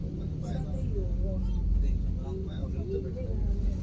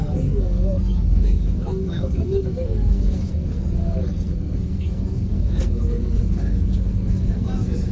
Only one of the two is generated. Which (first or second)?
second